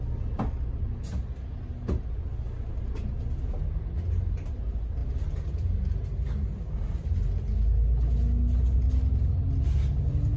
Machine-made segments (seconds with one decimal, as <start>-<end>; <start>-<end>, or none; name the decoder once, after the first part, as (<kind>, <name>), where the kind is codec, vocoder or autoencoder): none